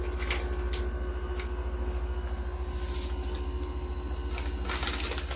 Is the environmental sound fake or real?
real